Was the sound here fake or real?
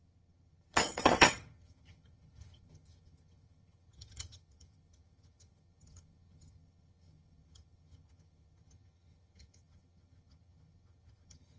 fake